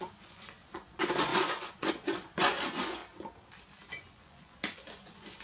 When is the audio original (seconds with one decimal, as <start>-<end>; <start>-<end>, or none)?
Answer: 3.0-3.9

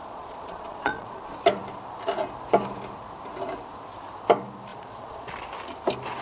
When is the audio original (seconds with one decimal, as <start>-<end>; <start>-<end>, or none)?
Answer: 1.2-4.7; 5.3-6.2

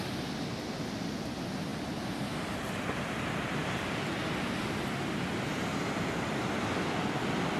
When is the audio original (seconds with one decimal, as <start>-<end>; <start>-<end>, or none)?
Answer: 0.0-7.6

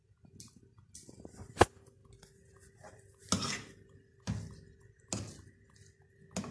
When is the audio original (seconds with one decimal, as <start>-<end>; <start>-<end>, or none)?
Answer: 0.0-6.5

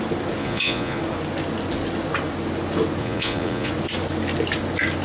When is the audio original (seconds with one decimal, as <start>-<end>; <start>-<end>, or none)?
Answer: 0.0-0.4; 1.0-3.0; 3.7-5.0

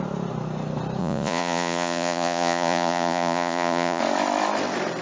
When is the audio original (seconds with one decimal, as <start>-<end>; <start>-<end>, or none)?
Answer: 0.0-1.0; 4.0-5.0